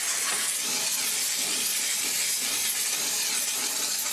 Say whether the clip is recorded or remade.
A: recorded